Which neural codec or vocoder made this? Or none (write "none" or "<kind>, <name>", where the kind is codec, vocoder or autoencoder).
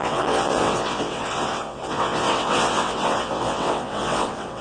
vocoder, WaveNeXt